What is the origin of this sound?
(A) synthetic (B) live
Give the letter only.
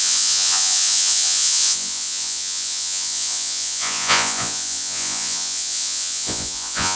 A